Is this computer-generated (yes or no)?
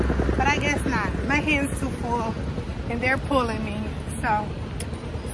no